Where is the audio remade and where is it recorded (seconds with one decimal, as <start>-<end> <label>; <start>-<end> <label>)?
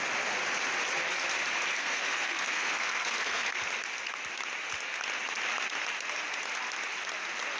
0.0-1.8 recorded; 1.8-3.5 remade; 3.5-7.6 recorded